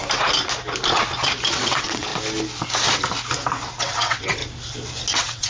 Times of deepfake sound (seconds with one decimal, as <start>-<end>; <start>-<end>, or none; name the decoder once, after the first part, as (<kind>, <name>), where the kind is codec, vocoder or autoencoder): 1.5-2.1 (vocoder, WaveNeXt); 3.8-4.4; 5.1-5.5